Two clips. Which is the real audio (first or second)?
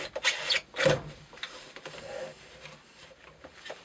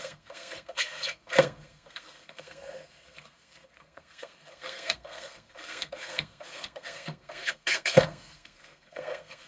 first